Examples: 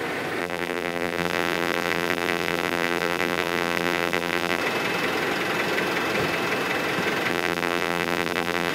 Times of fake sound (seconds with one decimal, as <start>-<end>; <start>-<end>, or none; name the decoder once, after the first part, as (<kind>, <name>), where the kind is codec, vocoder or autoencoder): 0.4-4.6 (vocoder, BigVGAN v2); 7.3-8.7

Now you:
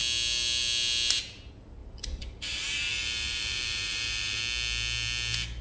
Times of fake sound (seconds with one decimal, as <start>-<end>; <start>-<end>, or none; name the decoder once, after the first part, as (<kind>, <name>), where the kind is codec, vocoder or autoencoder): 1.8-4.4 (vocoder, BigVGAN v2)

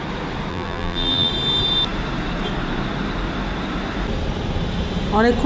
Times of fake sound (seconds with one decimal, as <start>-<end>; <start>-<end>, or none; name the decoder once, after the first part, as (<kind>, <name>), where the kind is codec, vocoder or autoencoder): 0.5-1.3 (vocoder, BigVGAN v2)

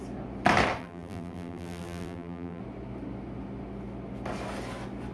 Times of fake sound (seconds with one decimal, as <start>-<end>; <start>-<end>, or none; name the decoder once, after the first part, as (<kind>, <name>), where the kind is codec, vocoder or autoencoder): 0.8-2.6 (vocoder, BigVGAN v2)